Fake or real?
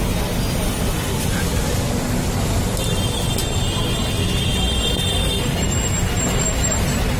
real